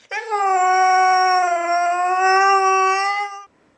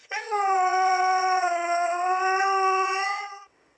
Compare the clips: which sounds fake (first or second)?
second